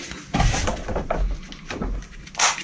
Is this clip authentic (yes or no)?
yes